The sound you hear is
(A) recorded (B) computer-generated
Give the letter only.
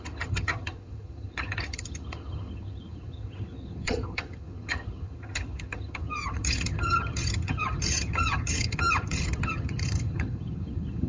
B